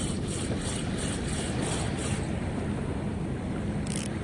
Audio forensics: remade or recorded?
remade